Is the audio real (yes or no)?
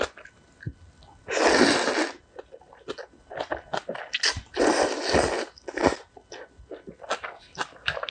yes